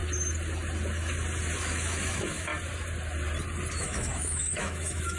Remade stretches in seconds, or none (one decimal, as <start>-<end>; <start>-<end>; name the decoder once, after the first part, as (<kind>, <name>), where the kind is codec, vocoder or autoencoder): 1.6-2.5 (autoencoder, DAC-VAE); 3.7-5.2